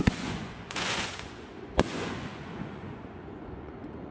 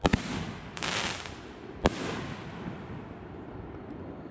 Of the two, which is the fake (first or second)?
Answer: first